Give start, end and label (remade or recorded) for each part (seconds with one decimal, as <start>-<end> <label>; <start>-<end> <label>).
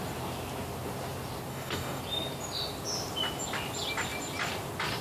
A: 0.0-1.5 recorded; 1.5-2.0 remade; 2.0-5.0 recorded